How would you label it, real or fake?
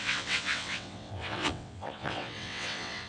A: fake